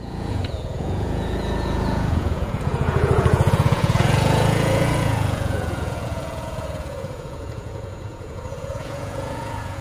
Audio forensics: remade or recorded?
remade